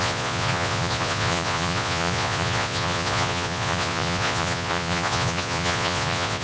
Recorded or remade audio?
remade